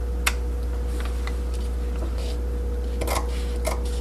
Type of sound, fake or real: real